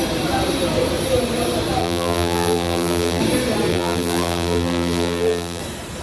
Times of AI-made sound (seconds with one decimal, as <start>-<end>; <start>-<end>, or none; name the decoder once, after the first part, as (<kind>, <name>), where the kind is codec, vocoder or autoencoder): 1.8-3.2 (vocoder, BigVGAN v2); 3.7-5.6